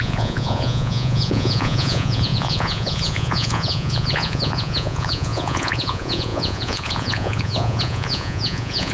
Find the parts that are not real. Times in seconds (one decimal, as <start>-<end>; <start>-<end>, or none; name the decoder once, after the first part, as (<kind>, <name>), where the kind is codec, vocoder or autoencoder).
0.0-8.9 (vocoder, Vocos)